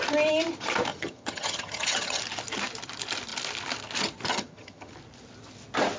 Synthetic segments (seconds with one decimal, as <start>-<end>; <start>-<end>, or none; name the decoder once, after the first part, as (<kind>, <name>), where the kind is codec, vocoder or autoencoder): 0.9-2.2 (vocoder, HiFi-GAN); 4.3-4.9